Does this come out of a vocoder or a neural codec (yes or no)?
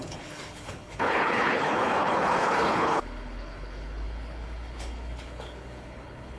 yes